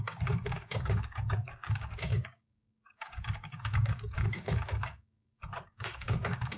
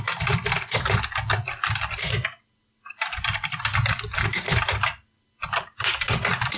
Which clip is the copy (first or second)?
first